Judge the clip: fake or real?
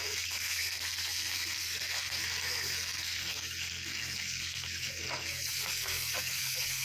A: fake